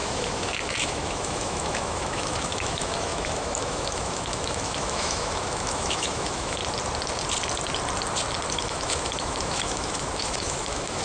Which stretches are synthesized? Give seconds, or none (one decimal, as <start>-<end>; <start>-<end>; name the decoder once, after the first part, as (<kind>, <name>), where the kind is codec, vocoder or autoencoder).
0.0-6.6 (autoencoder, DAC-VAE); 8.5-11.0